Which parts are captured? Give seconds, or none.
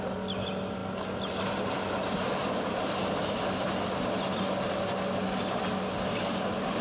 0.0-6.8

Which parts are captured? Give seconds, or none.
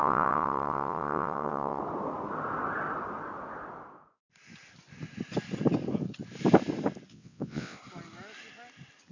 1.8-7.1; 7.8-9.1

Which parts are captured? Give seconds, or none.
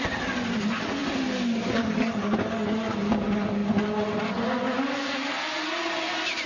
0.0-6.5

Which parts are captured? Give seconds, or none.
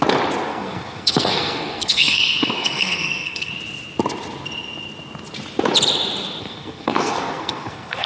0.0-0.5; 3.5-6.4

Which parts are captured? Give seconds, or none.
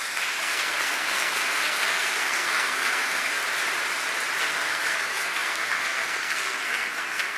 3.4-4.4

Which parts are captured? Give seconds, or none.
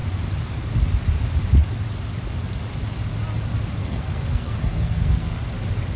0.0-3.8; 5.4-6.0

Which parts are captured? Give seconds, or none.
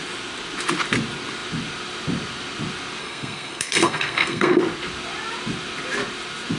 0.0-3.0; 4.6-6.6